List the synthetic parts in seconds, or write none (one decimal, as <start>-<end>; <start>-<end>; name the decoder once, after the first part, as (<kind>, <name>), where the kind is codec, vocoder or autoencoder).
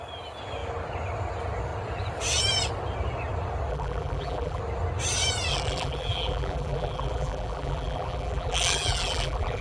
3.7-4.6 (vocoder, BigVGAN v2); 5.5-9.6